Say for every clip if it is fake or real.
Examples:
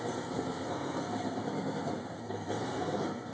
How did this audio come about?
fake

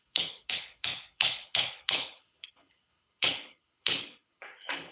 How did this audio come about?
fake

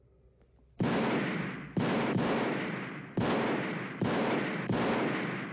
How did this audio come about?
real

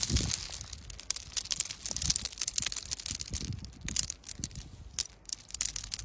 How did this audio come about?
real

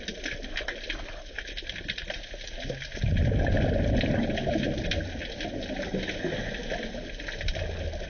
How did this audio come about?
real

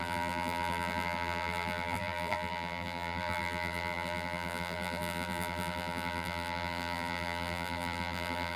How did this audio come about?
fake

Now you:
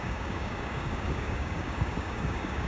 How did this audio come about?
fake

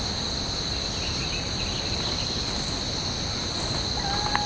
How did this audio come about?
real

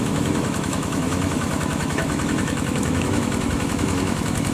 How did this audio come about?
fake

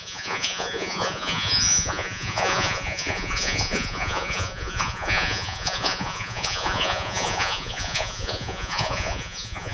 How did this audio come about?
fake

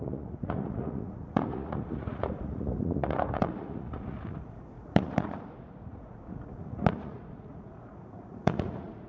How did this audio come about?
fake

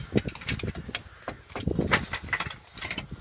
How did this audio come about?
real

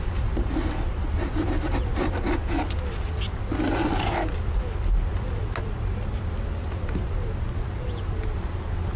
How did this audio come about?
real